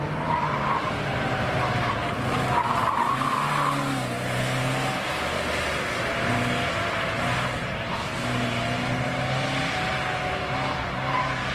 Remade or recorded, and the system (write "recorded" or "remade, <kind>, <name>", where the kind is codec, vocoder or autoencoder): recorded